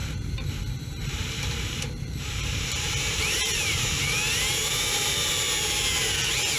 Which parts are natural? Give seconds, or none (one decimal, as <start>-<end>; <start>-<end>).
4.0-4.6; 5.3-6.6